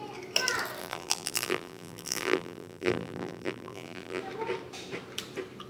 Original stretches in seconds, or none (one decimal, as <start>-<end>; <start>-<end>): 0.0-0.8; 4.2-5.7